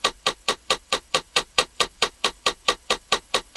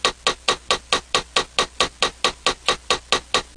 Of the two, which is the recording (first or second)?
second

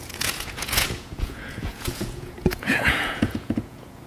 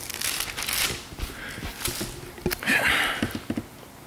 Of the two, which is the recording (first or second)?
second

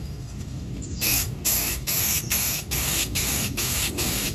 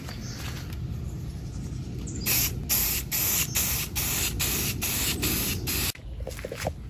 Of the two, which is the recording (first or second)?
second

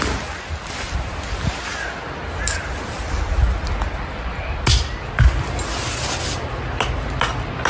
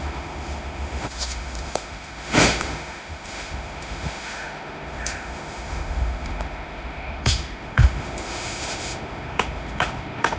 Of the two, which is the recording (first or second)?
first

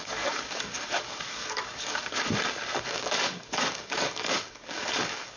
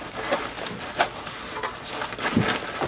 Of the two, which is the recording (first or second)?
second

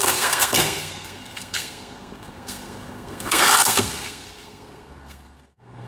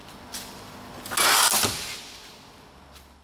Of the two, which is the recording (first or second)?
second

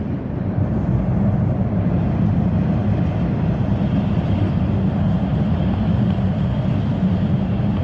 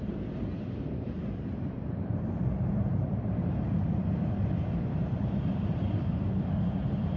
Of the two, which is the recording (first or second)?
first